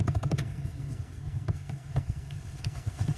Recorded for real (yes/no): no